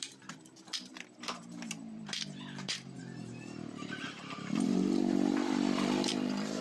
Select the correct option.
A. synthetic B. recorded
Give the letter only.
A